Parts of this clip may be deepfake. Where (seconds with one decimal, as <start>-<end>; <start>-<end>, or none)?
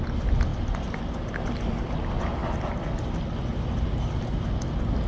none